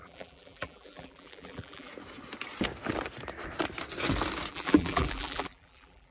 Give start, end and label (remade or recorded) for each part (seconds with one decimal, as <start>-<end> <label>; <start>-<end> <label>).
0.0-1.9 remade; 1.9-4.5 recorded; 4.5-6.1 remade